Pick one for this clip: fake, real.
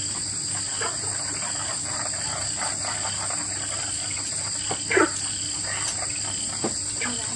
real